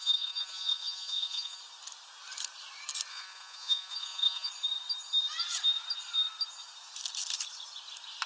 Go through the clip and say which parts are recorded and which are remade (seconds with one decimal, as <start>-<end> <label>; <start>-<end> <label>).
0.0-1.6 remade; 1.6-3.1 recorded; 3.1-4.5 remade; 4.5-8.3 recorded